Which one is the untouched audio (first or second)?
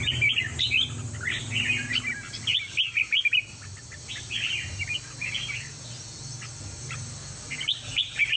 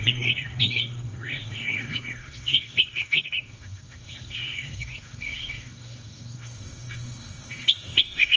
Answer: first